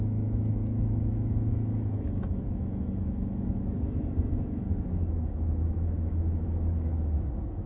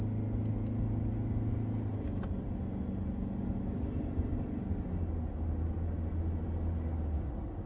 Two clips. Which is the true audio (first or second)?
second